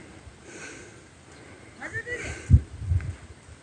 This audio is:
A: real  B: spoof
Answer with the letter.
A